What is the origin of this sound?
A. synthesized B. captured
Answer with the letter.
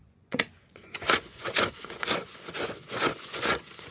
A